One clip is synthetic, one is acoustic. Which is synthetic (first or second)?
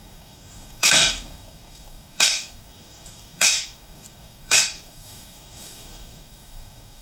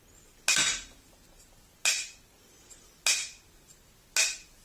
first